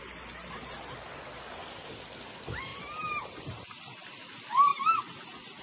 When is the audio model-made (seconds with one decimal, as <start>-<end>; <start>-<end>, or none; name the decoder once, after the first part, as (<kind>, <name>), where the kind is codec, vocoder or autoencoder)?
none